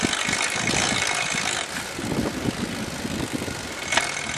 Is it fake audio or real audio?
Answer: real